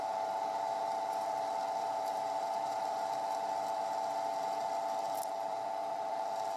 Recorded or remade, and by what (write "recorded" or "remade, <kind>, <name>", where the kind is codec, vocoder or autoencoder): remade, vocoder, BigVGAN v2